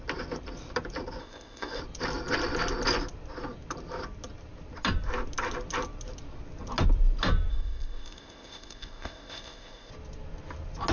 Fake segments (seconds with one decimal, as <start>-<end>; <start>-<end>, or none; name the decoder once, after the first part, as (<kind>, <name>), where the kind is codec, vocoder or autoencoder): 1.2-1.8 (codec, ZipCodec); 7.5-9.9

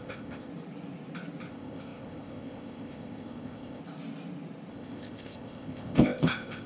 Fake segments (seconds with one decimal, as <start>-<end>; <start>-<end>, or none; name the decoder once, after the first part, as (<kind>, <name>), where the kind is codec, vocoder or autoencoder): 0.0-0.5 (codec, ZipCodec); 1.5-3.8; 4.7-6.7

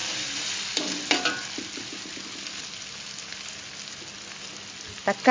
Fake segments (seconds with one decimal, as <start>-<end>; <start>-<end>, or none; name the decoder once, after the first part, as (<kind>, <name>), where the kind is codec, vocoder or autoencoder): none

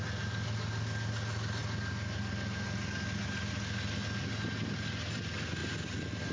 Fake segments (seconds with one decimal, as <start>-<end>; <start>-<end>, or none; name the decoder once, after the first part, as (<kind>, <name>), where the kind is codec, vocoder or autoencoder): none